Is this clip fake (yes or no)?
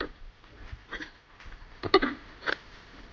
no